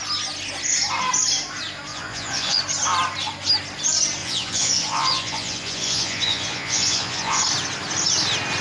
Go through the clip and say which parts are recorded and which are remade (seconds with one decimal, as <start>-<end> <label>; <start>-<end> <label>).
0.0-1.9 recorded; 1.9-2.6 remade; 2.6-4.2 recorded; 4.2-7.4 remade; 7.4-8.6 recorded